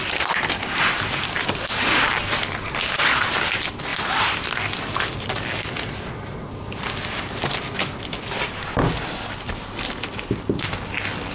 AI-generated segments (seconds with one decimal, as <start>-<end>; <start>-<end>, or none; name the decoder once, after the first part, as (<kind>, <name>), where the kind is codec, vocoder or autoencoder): none